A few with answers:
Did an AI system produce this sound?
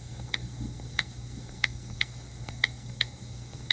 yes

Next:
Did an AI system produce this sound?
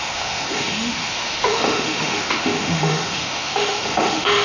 yes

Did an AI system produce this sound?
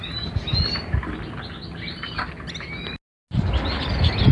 no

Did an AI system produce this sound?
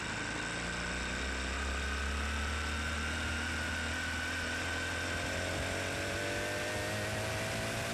no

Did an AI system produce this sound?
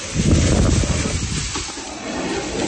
no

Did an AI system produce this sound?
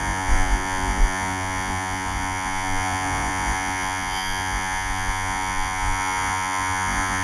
yes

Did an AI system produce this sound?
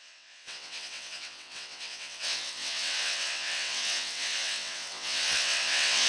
yes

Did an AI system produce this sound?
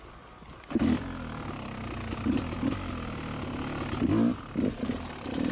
no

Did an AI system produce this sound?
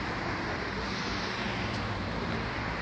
no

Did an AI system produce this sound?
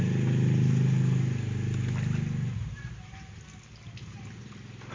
no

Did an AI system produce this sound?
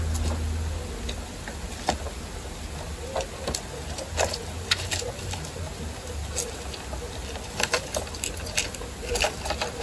no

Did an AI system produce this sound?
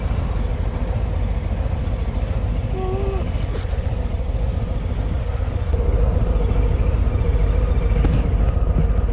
no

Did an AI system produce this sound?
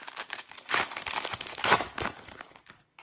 yes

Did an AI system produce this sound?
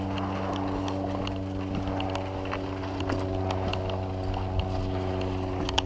no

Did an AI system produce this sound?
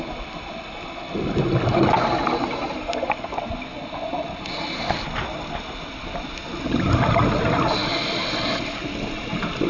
no